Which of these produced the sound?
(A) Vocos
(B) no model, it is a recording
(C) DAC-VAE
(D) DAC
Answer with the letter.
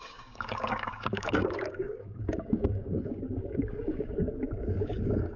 D